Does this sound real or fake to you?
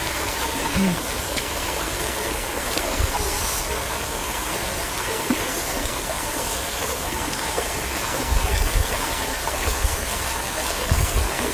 fake